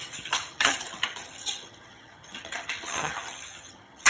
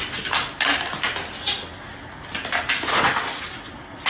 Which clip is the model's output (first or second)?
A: first